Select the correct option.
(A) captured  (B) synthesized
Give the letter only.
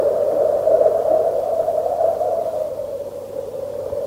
B